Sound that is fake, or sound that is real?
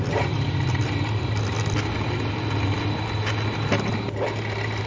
real